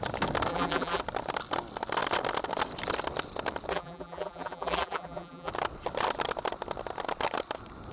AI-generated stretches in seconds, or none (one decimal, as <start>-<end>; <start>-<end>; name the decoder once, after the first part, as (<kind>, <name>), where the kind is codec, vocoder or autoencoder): 0.5-1.0 (vocoder, BigVGAN v2); 3.7-5.5